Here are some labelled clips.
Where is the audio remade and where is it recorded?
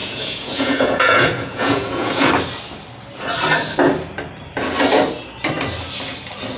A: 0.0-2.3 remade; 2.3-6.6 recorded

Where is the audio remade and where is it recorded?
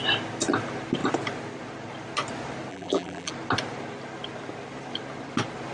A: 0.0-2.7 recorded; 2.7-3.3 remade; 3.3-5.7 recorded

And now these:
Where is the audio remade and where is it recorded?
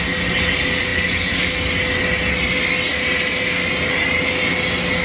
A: 0.0-5.0 recorded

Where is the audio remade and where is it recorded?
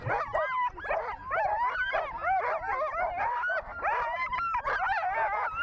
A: 0.0-5.6 recorded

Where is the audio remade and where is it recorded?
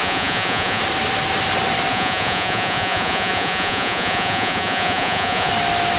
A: 0.0-0.8 remade; 0.8-1.9 recorded; 1.9-5.5 remade; 5.5-6.0 recorded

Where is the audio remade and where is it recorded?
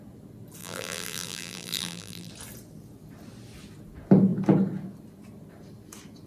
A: 0.0-0.6 recorded; 0.6-2.3 remade; 2.3-6.3 recorded